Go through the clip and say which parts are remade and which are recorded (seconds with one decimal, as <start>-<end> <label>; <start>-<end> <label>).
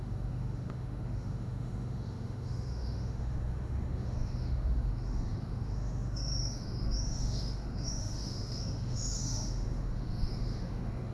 0.0-11.1 remade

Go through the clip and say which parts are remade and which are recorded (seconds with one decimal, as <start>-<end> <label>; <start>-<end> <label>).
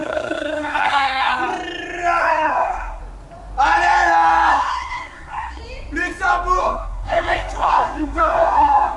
0.0-1.3 remade; 1.3-2.2 recorded; 2.2-3.0 remade; 3.0-4.5 recorded; 4.5-5.6 remade; 5.6-6.6 recorded; 6.6-9.0 remade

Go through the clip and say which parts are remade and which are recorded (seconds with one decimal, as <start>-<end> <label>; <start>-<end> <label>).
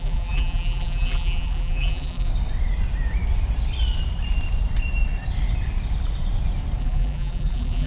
0.0-2.3 remade; 2.3-6.8 recorded; 6.8-7.9 remade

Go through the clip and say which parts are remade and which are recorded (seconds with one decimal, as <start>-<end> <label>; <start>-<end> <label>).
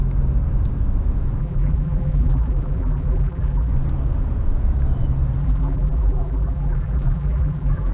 0.0-1.4 recorded; 1.4-3.7 remade; 3.7-5.4 recorded; 5.4-7.9 remade